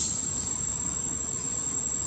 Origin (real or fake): real